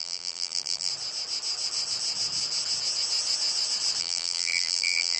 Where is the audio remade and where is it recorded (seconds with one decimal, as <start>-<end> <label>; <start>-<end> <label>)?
0.0-0.9 remade; 0.9-4.0 recorded; 4.0-5.2 remade